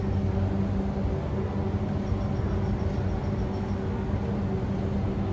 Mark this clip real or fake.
real